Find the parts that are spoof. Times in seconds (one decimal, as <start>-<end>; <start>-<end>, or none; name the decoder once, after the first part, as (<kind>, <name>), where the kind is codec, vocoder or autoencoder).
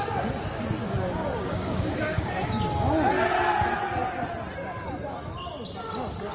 0.8-2.5 (codec, DAC)